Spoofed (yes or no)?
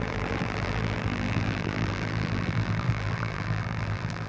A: yes